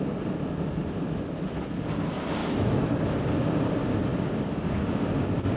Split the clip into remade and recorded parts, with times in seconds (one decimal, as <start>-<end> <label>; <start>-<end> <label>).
0.0-2.4 recorded; 2.4-2.9 remade; 2.9-5.6 recorded